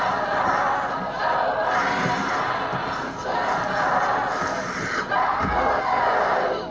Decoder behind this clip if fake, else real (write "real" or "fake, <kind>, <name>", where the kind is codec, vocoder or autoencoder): real